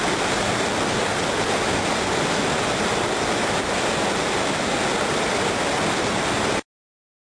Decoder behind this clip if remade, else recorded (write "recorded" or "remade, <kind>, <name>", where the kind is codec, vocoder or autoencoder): recorded